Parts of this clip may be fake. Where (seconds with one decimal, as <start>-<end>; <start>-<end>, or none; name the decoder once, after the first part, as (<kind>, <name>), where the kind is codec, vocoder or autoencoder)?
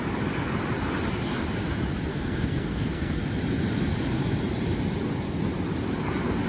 2.1-3.2 (codec, SNAC)